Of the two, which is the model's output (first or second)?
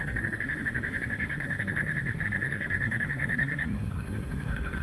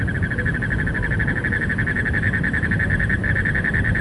first